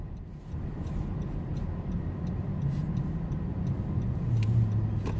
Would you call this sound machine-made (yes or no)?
no